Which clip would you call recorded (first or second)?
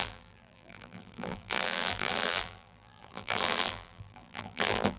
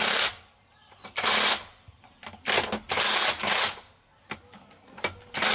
second